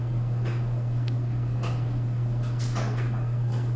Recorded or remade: remade